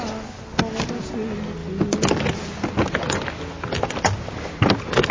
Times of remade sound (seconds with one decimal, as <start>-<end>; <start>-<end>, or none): none